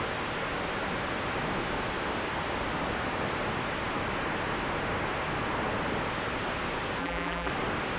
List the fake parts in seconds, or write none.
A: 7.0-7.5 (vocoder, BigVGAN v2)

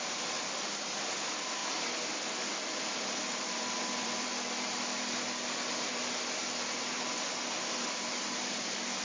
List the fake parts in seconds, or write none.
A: 0.0-4.3 (vocoder, BigVGAN v2); 7.6-9.0

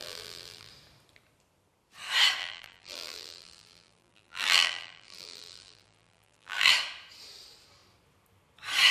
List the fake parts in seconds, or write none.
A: 0.0-0.7 (vocoder, BigVGAN v2); 2.4-6.7